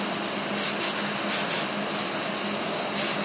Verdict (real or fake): real